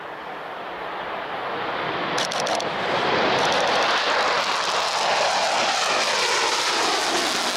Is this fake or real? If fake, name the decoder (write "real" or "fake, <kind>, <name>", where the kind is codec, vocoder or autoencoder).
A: real